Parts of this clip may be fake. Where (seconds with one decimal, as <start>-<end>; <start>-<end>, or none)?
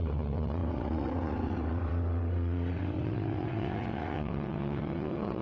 0.0-5.4